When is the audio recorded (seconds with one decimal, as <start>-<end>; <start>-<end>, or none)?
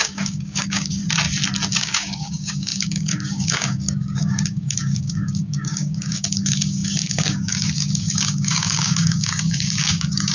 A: 1.0-1.7